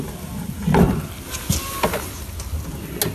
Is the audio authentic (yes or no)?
yes